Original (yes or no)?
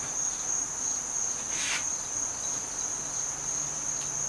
yes